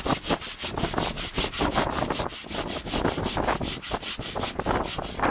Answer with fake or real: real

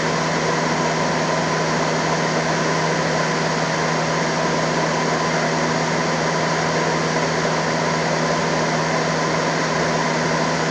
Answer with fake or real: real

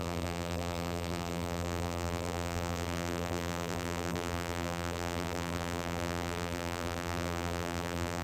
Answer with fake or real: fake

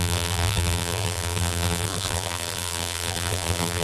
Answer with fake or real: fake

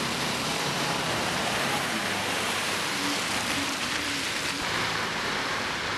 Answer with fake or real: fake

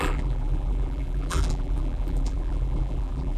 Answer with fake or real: fake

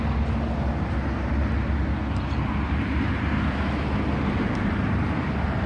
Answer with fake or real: real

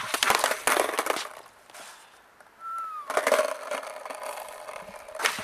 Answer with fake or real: real